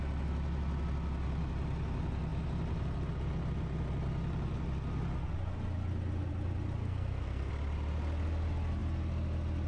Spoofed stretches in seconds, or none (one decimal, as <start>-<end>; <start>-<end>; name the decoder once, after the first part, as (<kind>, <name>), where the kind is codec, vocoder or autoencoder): 6.8-7.5 (codec, SNAC)